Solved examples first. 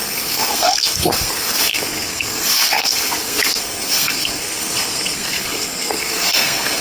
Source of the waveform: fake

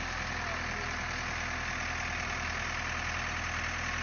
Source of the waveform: real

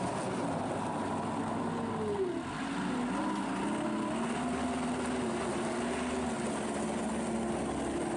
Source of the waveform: real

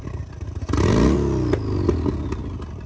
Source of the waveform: real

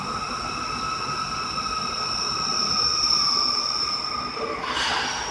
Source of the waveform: real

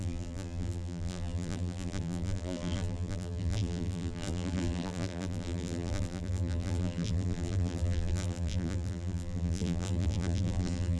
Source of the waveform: fake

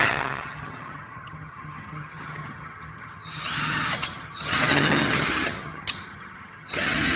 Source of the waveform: fake